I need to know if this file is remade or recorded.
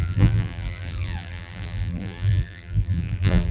remade